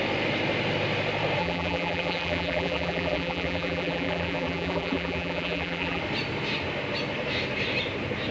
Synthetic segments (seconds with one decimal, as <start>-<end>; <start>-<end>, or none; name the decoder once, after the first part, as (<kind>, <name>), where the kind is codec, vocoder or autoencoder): 1.4-6.0 (vocoder, BigVGAN v2)